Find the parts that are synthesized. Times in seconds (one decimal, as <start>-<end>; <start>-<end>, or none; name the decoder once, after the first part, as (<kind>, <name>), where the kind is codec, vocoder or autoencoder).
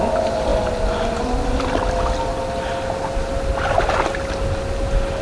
none